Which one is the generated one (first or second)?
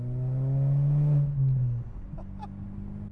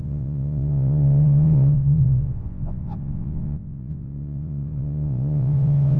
second